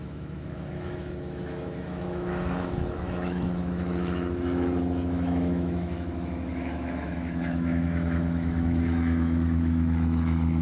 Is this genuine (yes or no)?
no